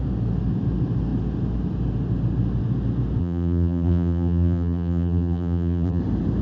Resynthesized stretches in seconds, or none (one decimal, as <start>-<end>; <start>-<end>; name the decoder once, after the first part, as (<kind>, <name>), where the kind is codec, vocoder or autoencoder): 3.2-6.0 (vocoder, BigVGAN v2)